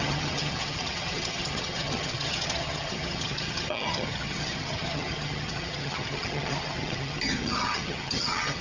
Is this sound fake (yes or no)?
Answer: yes